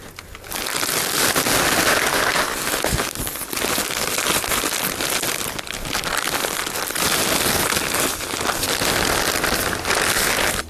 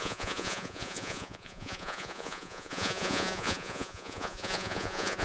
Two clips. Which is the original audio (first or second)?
first